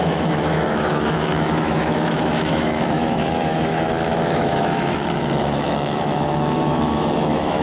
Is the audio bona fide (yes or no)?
no